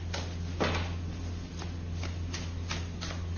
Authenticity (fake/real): real